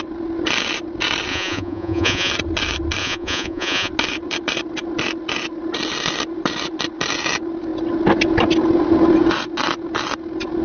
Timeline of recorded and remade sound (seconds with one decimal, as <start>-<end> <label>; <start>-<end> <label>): 0.0-1.3 recorded; 1.3-2.3 remade; 2.3-3.0 recorded; 3.0-3.9 remade; 3.9-10.6 recorded